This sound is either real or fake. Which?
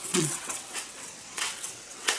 fake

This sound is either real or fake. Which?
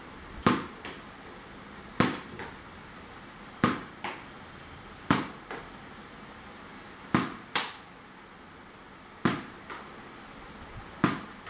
real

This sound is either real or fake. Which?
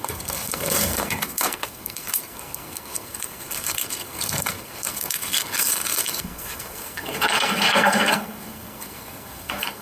fake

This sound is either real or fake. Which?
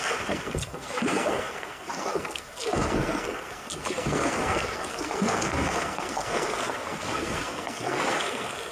fake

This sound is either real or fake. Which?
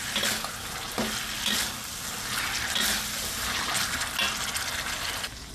real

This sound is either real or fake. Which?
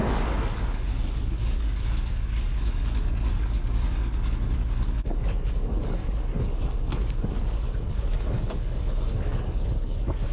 fake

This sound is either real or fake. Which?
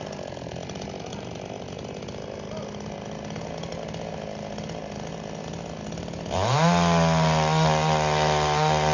real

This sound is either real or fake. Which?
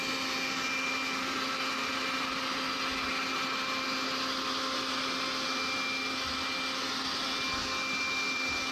real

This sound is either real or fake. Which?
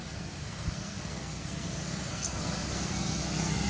fake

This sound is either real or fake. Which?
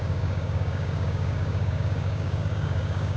fake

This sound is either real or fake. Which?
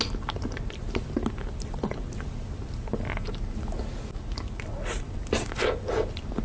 real